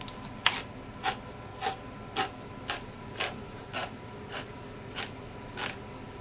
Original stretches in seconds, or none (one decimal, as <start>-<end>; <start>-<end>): 0.0-6.2